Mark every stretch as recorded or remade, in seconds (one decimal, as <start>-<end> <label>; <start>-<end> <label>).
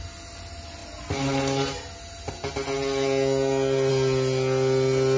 0.0-5.2 recorded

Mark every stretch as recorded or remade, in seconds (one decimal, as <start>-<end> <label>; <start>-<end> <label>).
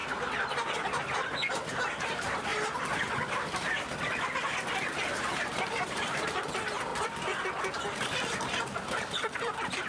0.0-2.0 recorded; 2.0-2.5 remade; 2.5-5.2 recorded; 5.2-6.9 remade; 6.9-8.6 recorded; 8.6-9.9 remade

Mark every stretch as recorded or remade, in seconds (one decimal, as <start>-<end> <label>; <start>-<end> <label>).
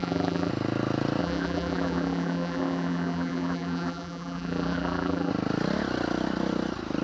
0.0-0.5 remade; 0.5-1.2 recorded; 1.2-5.3 remade; 5.3-7.0 recorded